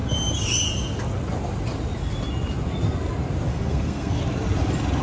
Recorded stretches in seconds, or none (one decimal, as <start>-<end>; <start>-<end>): 0.0-3.5; 4.2-5.0